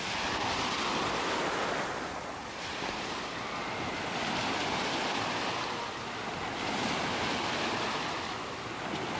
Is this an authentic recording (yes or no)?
yes